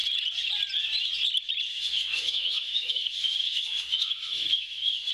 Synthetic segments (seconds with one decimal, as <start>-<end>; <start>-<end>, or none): 1.7-5.1